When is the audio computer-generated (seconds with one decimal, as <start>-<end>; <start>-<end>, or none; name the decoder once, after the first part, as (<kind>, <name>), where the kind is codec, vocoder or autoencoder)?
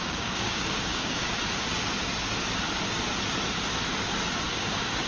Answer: 0.0-1.4 (codec, DAC); 4.5-5.1